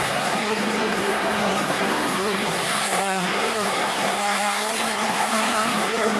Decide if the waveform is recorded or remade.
remade